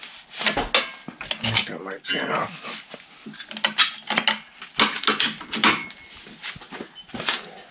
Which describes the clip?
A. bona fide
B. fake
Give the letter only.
A